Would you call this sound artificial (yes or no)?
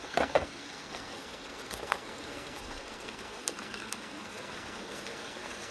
yes